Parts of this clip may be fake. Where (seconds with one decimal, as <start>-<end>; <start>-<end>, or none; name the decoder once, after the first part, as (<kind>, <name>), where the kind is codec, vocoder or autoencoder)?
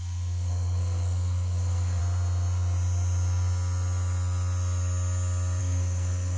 0.0-2.0 (codec, SNAC); 5.6-6.4